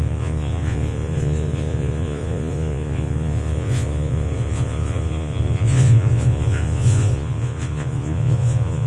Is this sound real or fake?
fake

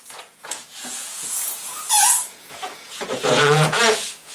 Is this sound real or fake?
fake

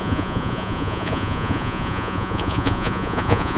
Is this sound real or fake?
fake